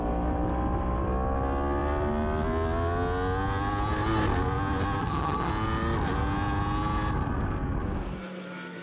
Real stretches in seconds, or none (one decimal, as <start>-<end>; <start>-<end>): 0.0-5.0; 5.5-8.8